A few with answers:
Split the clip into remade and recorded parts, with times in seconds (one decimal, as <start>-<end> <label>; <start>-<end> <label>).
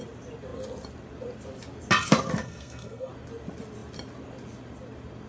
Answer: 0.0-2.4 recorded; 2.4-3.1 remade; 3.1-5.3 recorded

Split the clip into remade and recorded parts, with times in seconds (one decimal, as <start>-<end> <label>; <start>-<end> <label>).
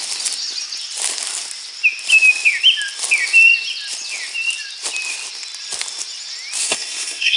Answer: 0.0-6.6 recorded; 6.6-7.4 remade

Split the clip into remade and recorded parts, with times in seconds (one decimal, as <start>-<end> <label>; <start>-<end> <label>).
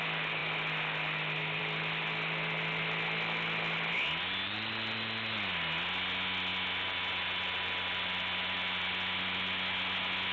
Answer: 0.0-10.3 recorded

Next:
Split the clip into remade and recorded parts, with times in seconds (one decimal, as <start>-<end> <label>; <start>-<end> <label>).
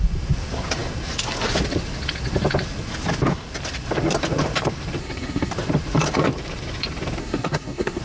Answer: 0.0-5.0 recorded; 5.0-5.5 remade; 5.5-7.2 recorded; 7.2-8.0 remade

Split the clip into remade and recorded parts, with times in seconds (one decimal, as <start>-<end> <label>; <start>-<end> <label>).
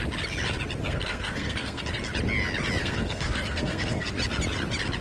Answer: 0.0-0.8 recorded; 0.8-1.8 remade; 1.8-2.8 recorded; 2.8-4.1 remade; 4.1-5.0 recorded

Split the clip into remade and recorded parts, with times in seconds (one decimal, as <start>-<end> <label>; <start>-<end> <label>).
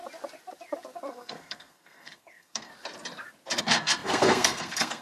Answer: 0.0-1.1 recorded; 1.1-2.7 remade; 2.7-3.6 recorded; 3.6-5.0 remade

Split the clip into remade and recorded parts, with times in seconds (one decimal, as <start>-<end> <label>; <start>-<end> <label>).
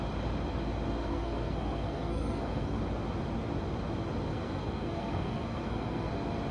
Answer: 0.0-1.0 recorded; 1.0-2.8 remade; 2.8-4.3 recorded; 4.3-6.1 remade; 6.1-6.5 recorded